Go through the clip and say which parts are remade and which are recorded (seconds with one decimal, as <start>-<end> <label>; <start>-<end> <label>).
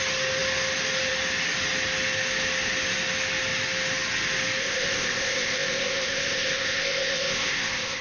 0.0-4.6 recorded; 4.6-8.0 remade